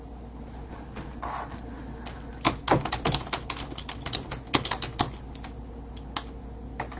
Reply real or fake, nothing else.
real